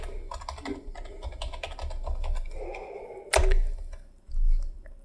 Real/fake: real